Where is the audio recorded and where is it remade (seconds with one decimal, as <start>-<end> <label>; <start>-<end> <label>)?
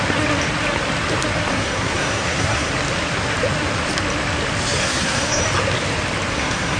0.0-1.5 recorded; 1.5-2.7 remade; 2.7-4.8 recorded; 4.8-5.4 remade; 5.4-6.3 recorded; 6.3-6.8 remade